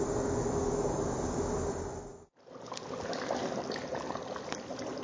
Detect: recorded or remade recorded